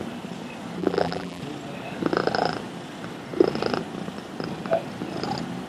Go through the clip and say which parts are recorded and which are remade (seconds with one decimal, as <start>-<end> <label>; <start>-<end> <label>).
0.0-0.8 recorded; 0.8-1.4 remade; 1.4-5.7 recorded